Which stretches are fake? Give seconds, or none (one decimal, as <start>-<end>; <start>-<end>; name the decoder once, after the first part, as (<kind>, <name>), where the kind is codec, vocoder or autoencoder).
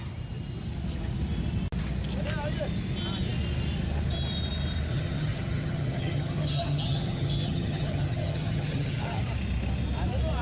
4.9-9.2 (vocoder, HiFi-GAN)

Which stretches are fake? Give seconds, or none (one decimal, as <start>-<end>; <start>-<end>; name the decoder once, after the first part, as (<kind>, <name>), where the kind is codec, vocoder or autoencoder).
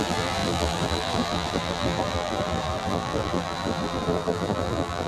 0.0-5.1 (vocoder, BigVGAN v2)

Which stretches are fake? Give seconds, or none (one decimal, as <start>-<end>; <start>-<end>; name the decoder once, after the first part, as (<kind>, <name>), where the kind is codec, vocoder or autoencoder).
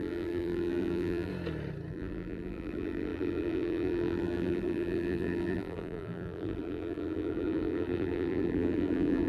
0.0-1.3 (vocoder, BigVGAN v2); 1.9-9.3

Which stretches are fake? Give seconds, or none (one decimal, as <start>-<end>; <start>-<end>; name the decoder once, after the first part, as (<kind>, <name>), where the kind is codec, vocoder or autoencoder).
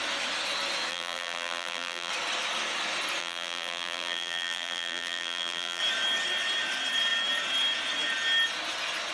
0.9-2.1 (vocoder, BigVGAN v2); 3.2-5.8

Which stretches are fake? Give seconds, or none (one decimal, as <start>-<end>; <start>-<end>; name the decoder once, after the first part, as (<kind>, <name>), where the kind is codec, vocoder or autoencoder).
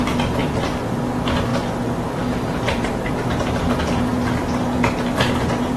0.4-0.9 (vocoder, BigVGAN v2); 4.1-5.8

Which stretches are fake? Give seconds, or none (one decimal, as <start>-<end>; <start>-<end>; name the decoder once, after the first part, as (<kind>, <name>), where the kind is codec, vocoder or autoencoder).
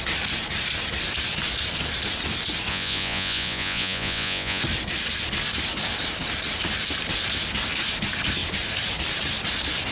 2.7-4.6 (vocoder, Vocos)